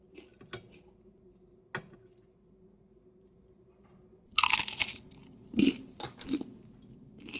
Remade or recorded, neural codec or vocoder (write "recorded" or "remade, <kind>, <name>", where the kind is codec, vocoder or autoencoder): recorded